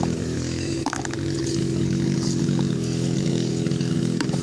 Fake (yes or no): yes